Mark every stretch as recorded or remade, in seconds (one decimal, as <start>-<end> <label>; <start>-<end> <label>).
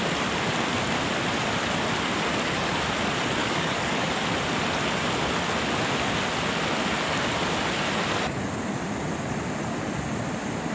0.0-3.4 recorded; 3.4-4.1 remade; 4.1-10.7 recorded